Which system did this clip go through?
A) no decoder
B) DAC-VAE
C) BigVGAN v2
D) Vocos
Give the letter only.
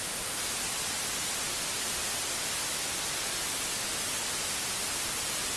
A